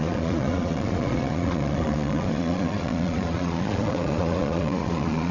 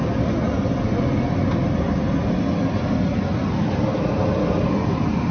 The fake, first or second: first